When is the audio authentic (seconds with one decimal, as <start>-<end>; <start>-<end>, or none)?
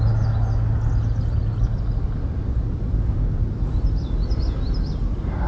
0.0-5.5